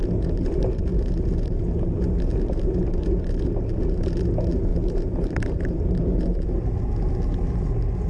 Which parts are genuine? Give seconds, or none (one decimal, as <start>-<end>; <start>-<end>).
0.0-4.7; 6.2-8.1